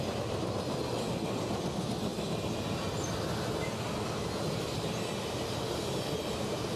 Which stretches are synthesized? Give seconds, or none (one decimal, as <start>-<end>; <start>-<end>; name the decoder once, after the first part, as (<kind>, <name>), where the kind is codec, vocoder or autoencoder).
none